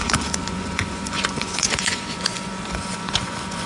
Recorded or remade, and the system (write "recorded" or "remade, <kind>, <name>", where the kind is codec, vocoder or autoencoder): remade, vocoder, Vocos